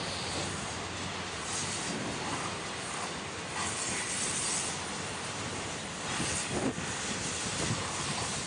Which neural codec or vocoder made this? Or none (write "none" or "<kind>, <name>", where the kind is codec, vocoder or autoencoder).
none